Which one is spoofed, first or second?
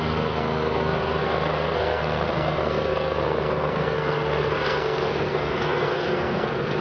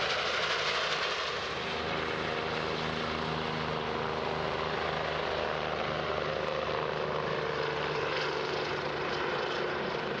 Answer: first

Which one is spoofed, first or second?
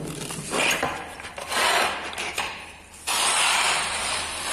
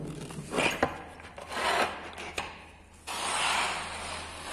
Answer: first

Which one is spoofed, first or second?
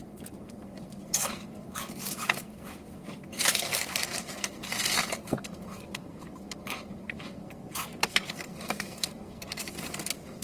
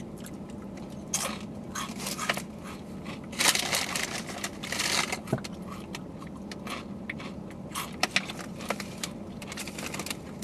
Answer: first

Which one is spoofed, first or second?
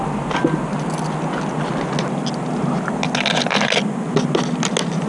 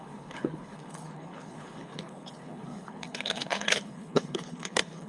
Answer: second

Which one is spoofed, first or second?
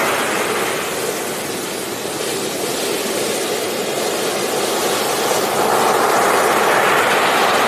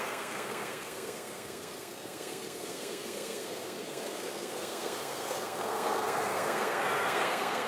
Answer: second